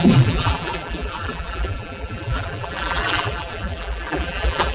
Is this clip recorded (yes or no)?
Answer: no